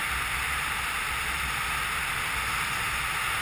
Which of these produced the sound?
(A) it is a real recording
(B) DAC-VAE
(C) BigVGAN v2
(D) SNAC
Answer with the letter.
A